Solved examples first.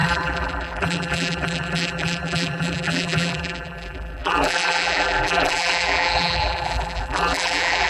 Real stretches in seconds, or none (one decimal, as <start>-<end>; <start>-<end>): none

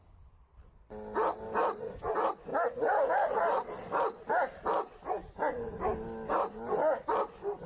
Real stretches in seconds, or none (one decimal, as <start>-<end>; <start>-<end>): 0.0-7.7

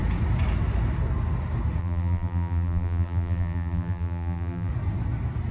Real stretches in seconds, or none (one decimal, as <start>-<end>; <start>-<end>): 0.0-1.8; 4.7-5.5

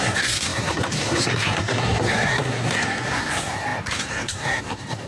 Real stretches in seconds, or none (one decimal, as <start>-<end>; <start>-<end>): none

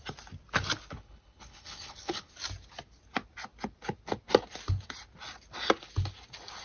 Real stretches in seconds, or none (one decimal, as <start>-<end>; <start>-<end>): 0.0-0.9; 2.3-6.6

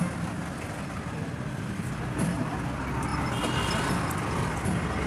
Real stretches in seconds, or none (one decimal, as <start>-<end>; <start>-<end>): 0.0-5.1